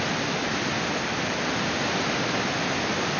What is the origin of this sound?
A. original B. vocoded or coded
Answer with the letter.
A